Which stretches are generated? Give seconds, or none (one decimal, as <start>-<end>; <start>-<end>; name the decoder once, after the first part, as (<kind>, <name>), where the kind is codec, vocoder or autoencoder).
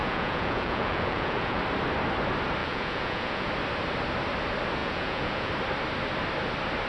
0.0-1.6 (vocoder, Vocos); 2.6-3.5; 4.8-5.5